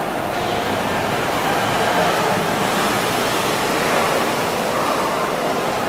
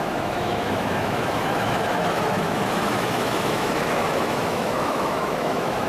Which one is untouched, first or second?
first